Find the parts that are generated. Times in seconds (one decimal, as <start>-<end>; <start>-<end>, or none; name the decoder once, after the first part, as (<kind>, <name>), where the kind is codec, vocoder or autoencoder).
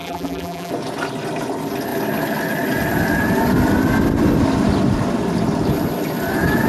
0.0-0.7 (vocoder, BigVGAN v2)